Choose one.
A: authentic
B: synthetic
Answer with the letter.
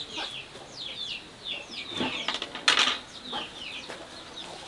A